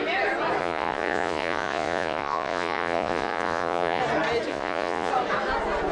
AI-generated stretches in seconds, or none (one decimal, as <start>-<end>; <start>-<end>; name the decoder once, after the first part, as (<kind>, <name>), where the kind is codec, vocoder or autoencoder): 0.6-4.0 (vocoder, Vocos); 4.5-5.1